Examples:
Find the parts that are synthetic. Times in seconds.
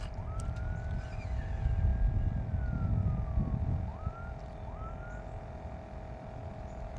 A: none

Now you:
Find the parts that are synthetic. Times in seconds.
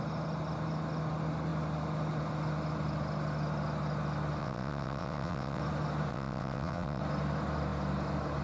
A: 4.4-5.6 (vocoder, WaveNeXt); 6.1-7.0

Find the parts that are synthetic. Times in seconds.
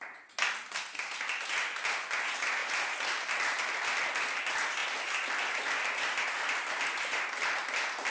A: none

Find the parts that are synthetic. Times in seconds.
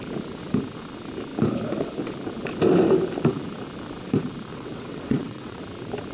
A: 4.5-5.6 (vocoder, WaveNeXt)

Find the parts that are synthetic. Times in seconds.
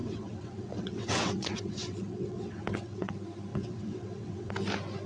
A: 0.0-3.1 (vocoder, WaveNeXt); 3.5-4.5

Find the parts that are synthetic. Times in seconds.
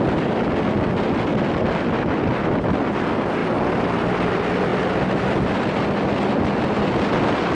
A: none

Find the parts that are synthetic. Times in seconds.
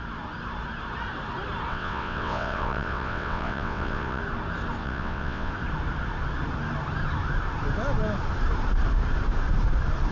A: 1.7-4.2 (vocoder, WaveNeXt); 4.8-5.5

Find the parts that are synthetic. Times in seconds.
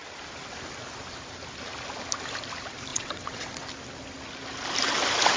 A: 2.9-3.6 (vocoder, WaveNeXt)